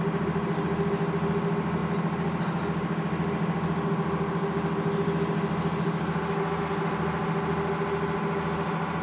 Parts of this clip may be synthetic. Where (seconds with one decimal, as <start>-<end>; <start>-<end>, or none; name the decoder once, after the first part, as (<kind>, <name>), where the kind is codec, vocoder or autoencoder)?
none